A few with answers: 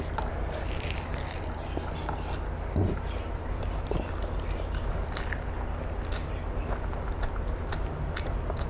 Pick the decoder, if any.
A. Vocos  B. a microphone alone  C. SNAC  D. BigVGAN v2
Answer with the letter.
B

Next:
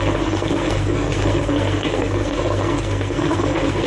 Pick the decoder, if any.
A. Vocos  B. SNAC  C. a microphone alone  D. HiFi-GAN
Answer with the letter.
B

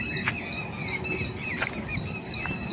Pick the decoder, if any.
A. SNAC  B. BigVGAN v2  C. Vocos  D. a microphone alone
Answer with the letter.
D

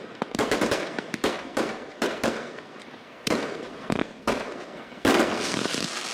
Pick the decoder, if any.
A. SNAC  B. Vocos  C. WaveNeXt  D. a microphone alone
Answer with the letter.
A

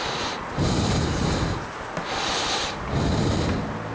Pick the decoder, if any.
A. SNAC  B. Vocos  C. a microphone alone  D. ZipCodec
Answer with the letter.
C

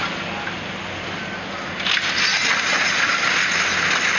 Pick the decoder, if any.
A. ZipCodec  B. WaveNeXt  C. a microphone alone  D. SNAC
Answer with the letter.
C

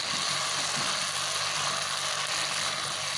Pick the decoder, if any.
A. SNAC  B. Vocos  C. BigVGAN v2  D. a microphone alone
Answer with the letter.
D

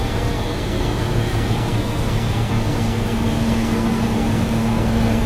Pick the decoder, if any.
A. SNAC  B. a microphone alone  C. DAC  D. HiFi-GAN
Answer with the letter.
A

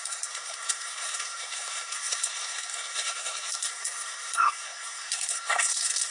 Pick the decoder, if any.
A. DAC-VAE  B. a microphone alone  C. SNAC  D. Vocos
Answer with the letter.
C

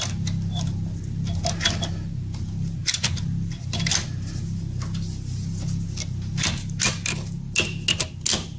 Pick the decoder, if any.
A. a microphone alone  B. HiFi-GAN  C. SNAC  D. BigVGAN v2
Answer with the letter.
A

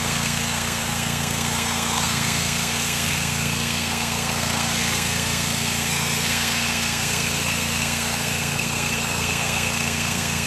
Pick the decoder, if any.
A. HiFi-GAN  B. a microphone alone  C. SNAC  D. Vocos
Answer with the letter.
C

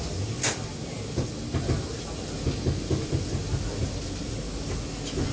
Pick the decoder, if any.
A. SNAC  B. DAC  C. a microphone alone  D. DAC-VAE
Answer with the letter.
C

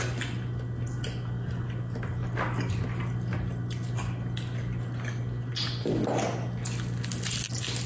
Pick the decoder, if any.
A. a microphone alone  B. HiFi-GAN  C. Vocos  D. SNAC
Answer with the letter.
A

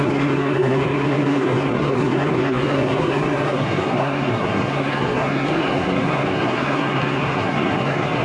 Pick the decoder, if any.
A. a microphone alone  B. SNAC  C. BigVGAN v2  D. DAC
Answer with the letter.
B